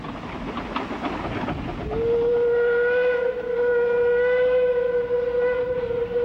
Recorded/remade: recorded